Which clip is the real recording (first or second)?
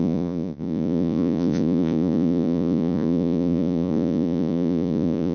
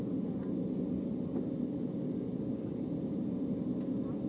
second